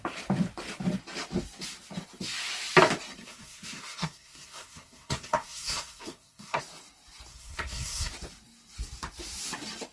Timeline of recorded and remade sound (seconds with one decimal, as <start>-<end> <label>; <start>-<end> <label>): 0.0-3.2 recorded; 3.2-6.6 remade; 6.6-7.3 recorded; 7.3-8.1 remade; 8.1-9.9 recorded